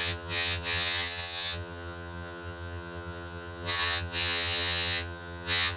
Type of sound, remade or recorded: remade